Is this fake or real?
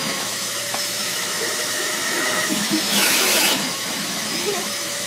fake